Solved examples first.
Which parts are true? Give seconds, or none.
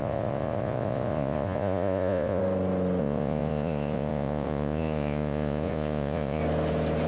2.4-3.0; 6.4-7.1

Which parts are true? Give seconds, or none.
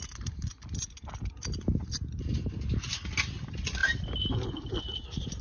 0.0-5.4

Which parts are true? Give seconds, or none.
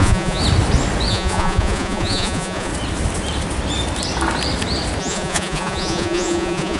0.4-1.1; 2.7-5.0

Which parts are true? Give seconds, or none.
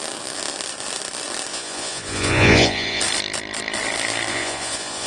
0.0-1.5; 3.0-4.3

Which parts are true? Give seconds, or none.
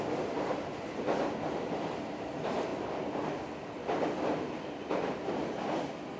0.0-6.2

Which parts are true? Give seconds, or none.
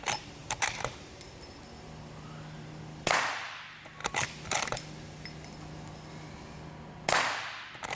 0.0-8.0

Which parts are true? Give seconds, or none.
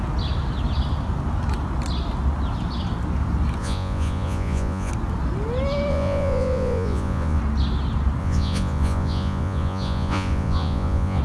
0.0-3.6; 4.9-5.9; 7.4-8.2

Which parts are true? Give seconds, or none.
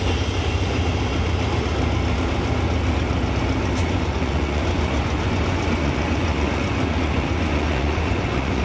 0.0-3.8